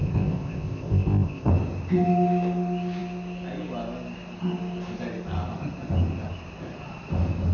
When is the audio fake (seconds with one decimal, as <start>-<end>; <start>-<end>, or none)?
0.0-1.5